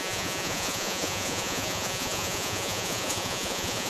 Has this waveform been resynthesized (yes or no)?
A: yes